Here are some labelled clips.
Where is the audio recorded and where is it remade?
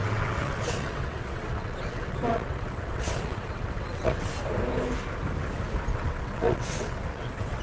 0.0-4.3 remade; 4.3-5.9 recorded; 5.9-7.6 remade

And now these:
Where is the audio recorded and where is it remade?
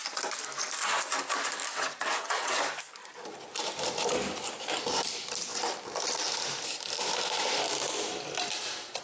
0.0-1.7 recorded; 1.7-2.6 remade; 2.6-9.0 recorded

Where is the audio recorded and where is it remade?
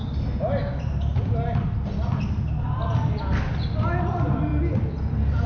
0.0-5.5 recorded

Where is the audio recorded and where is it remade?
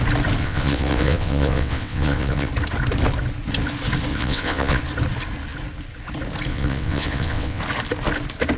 0.0-0.4 recorded; 0.4-2.5 remade; 2.5-4.1 recorded; 4.1-4.8 remade; 4.8-6.5 recorded; 6.5-7.6 remade; 7.6-8.6 recorded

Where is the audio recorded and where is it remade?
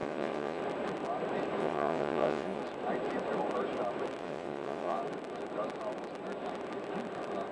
0.0-0.6 remade; 0.6-1.6 recorded; 1.6-2.6 remade; 2.6-4.2 recorded; 4.2-5.0 remade; 5.0-7.5 recorded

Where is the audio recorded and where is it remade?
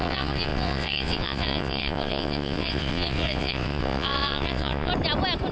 0.0-4.9 remade; 4.9-5.5 recorded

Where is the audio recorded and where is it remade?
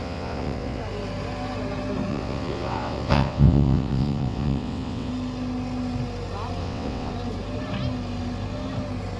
0.0-0.8 remade; 0.8-2.1 recorded; 2.1-5.1 remade; 5.1-6.6 recorded; 6.6-7.1 remade; 7.1-9.2 recorded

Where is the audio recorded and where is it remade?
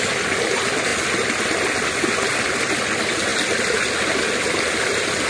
0.0-5.3 recorded